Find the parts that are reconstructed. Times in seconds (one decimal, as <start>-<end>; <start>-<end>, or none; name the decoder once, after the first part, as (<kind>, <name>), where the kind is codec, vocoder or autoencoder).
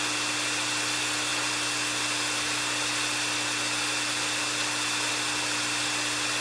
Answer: none